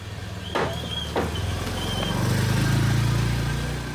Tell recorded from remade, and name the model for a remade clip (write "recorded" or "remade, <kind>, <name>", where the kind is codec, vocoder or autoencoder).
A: recorded